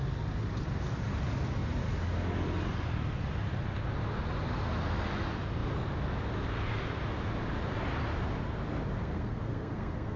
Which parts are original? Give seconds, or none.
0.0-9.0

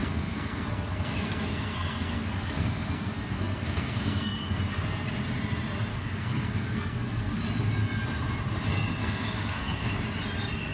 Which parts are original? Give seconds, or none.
4.6-5.9; 7.4-8.7; 9.9-10.7

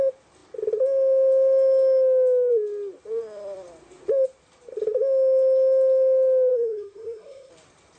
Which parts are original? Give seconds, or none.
0.0-6.5; 7.5-8.0

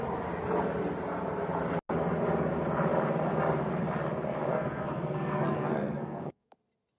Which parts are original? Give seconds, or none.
0.0-4.5; 6.5-7.0

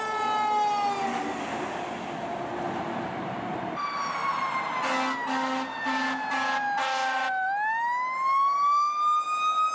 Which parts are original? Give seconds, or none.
0.0-9.7